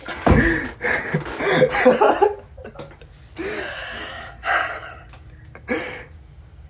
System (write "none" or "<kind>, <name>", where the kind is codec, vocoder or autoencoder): none